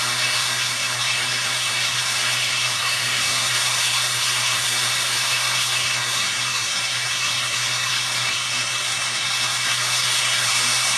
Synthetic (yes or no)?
yes